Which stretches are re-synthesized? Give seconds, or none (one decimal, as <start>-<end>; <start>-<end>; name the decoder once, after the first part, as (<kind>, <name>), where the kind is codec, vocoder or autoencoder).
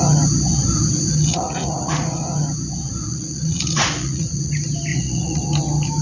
1.3-2.2 (vocoder, Vocos); 3.1-4.5; 4.9-5.4